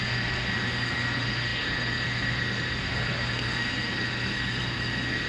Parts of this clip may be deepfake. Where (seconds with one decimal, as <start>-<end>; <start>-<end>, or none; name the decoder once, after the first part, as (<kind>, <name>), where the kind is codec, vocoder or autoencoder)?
0.0-5.3 (codec, SNAC)